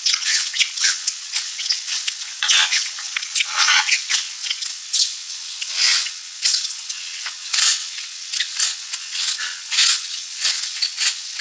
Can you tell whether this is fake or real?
fake